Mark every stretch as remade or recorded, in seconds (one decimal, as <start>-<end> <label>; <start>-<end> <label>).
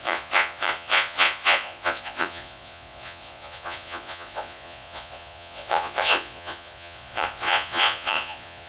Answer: 0.0-8.7 remade